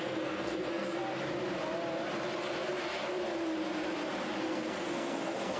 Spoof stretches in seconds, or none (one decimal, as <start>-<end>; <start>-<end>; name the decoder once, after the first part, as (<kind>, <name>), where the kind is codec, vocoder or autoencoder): 0.0-1.0 (codec, SNAC); 4.4-5.6